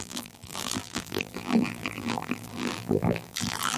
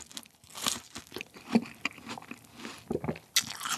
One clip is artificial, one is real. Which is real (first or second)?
second